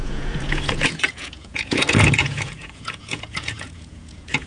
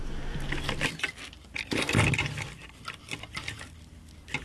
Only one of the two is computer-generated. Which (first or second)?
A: first